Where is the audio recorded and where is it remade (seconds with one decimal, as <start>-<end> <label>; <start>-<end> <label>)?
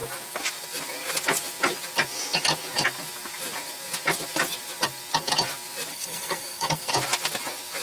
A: 0.0-5.9 recorded; 5.9-6.9 remade; 6.9-7.8 recorded